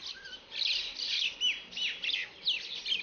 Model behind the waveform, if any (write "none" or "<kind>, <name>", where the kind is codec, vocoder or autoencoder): none